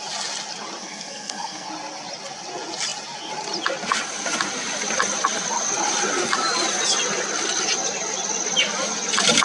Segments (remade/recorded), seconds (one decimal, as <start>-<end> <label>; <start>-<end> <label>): 0.0-0.8 recorded; 0.8-1.7 remade; 1.7-9.4 recorded